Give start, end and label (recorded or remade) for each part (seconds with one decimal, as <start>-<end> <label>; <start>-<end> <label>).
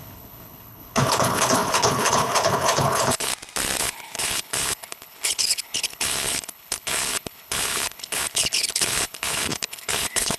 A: 0.0-3.3 remade; 3.3-3.8 recorded; 3.8-10.4 remade